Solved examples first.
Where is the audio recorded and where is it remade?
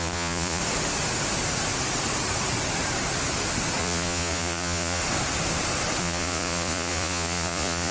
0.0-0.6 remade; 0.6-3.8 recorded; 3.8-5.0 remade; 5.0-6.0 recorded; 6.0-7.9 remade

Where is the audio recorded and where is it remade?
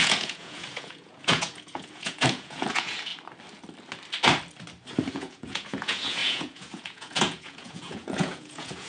0.0-3.1 remade; 3.1-5.1 recorded; 5.1-8.9 remade